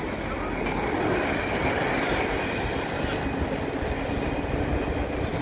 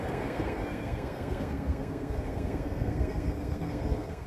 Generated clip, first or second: second